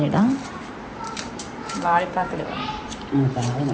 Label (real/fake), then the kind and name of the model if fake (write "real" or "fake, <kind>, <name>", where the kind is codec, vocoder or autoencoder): fake, vocoder, BigVGAN v2